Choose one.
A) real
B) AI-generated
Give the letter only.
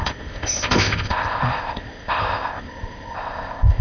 B